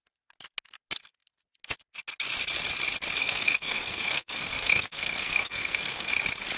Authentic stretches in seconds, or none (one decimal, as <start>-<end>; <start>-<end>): 0.0-3.2; 6.1-6.6